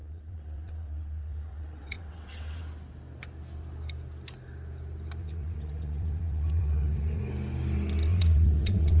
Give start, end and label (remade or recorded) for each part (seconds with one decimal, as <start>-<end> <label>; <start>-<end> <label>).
0.0-2.6 remade; 2.6-5.2 recorded; 5.2-7.2 remade; 7.2-8.1 recorded; 8.1-9.0 remade